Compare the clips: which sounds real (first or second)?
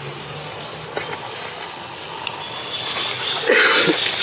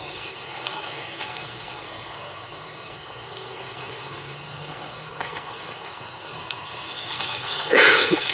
first